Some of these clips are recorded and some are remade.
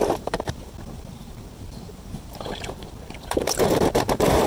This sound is remade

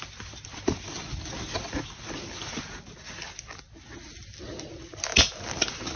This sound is recorded